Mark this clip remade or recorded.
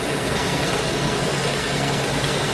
remade